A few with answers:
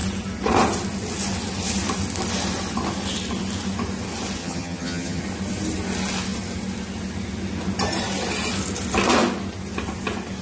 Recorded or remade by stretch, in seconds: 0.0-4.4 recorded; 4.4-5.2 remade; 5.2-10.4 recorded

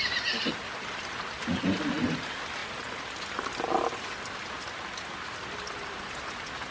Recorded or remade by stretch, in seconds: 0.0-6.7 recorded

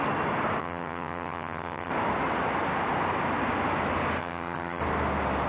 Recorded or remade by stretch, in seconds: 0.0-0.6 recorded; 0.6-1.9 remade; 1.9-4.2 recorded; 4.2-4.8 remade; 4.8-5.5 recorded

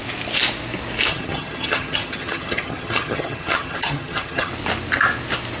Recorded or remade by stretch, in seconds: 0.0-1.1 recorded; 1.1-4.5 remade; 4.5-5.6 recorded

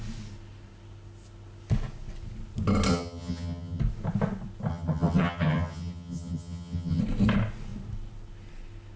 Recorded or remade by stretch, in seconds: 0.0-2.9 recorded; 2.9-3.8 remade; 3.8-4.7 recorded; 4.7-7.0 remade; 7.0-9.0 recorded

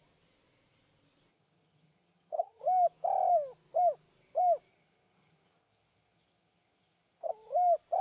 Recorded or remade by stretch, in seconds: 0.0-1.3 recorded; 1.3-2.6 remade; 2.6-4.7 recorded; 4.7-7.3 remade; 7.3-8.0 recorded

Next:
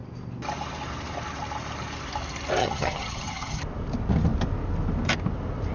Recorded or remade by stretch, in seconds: 0.0-2.6 recorded; 2.6-3.6 remade; 3.6-5.7 recorded

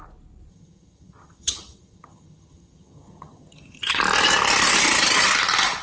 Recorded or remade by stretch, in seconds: 0.0-0.5 recorded; 0.5-4.0 remade; 4.0-5.8 recorded